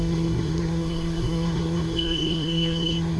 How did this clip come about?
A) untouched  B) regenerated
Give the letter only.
B